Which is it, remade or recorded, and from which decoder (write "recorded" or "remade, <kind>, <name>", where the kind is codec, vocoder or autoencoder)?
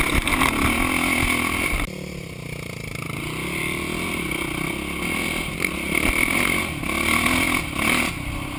recorded